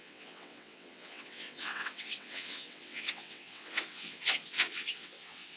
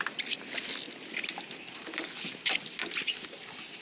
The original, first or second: second